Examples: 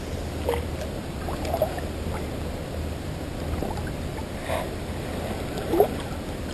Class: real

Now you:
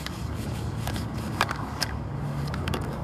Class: fake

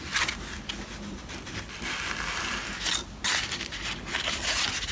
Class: real